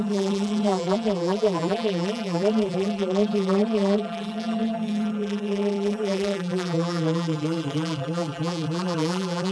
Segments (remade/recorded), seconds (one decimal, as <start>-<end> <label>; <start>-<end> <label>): 0.0-9.5 remade